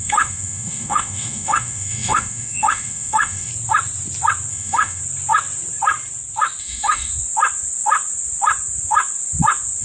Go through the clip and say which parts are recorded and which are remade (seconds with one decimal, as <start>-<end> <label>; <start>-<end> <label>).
0.0-3.5 remade; 3.5-4.5 recorded; 4.5-5.0 remade; 5.0-6.6 recorded; 6.6-7.1 remade; 7.1-9.8 recorded